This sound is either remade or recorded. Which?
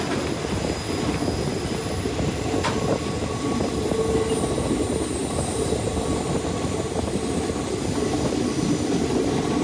recorded